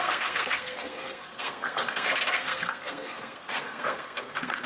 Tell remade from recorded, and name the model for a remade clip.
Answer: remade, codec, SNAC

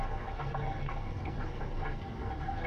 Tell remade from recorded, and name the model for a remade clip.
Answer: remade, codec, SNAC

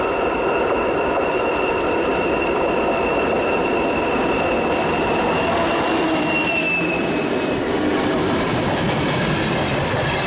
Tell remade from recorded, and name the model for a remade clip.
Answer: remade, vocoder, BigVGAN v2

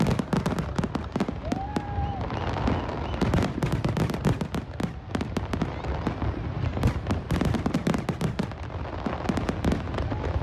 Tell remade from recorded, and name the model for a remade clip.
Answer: recorded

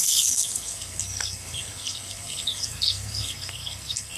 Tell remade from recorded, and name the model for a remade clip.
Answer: remade, codec, SNAC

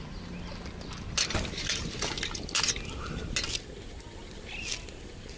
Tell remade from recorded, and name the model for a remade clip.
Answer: recorded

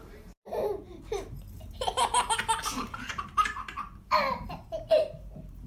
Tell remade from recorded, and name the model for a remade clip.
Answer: remade, vocoder, BigVGAN v2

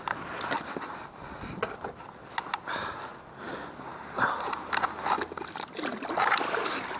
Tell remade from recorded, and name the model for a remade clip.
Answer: recorded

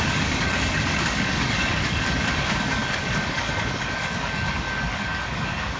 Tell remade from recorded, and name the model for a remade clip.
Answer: remade, codec, DAC